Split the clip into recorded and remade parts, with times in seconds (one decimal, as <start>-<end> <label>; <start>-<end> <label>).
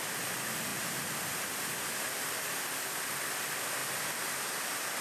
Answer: 0.0-5.0 recorded